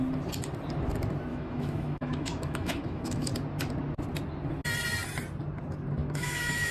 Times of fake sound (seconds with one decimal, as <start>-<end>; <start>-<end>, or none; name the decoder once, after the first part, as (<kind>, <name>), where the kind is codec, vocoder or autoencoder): 1.3-3.3 (autoencoder, DAC-VAE); 6.0-6.7